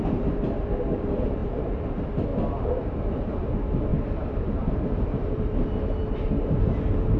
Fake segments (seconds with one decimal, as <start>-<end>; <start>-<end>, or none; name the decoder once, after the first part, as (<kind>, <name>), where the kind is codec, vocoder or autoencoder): 0.0-2.3 (vocoder, BigVGAN v2); 3.5-3.9; 4.4-7.2